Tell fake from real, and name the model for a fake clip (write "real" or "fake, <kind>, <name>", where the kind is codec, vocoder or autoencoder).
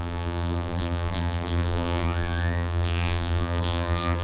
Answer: fake, vocoder, BigVGAN v2